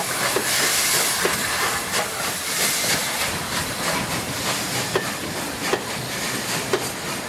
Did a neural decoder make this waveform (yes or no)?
no